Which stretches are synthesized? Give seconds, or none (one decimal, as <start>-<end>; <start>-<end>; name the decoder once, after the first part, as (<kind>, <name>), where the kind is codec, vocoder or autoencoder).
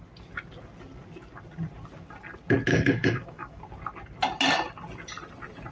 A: 2.7-3.6 (codec, DAC)